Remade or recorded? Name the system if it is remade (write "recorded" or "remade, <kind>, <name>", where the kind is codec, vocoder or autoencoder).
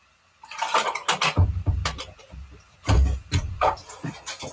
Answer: recorded